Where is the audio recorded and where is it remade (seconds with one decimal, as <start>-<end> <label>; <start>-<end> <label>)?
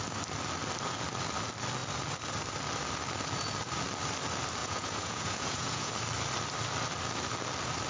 0.0-4.6 recorded; 4.6-5.9 remade; 5.9-7.9 recorded